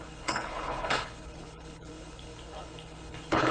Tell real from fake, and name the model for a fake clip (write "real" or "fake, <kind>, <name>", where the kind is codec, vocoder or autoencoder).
fake, codec, HILCodec